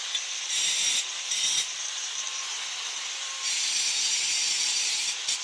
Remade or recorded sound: recorded